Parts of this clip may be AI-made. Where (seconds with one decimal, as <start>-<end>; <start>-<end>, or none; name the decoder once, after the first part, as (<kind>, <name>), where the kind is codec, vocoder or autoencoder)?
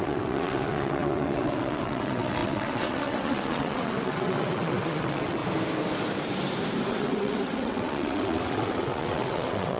0.0-5.4 (vocoder, WaveNeXt); 6.9-9.8